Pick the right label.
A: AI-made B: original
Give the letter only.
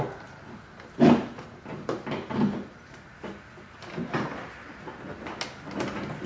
B